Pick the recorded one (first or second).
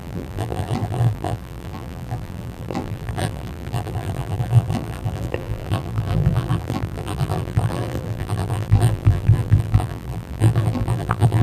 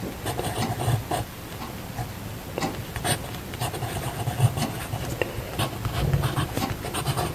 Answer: second